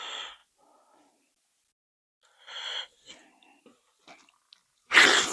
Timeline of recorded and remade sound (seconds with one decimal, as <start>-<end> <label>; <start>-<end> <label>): 0.0-5.3 recorded